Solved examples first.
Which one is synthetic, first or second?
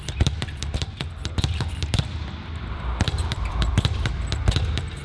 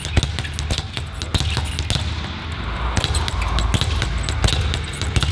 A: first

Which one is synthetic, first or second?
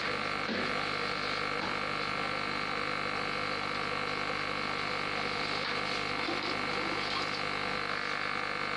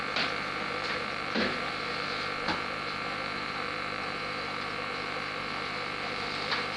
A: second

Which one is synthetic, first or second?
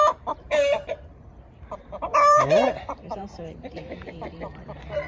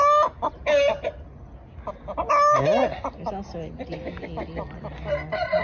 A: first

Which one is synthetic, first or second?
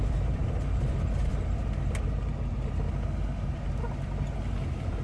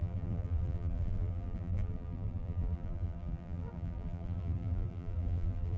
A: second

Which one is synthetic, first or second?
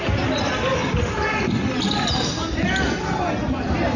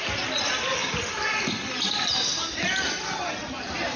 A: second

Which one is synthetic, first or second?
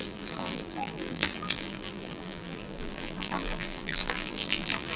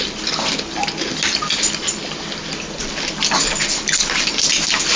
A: first